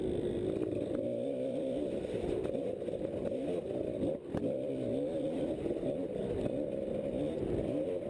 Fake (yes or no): yes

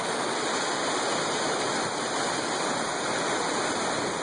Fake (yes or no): no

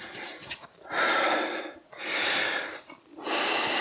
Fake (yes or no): no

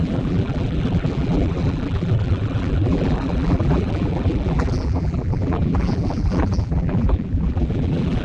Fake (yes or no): yes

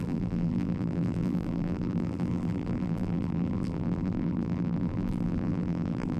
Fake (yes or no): yes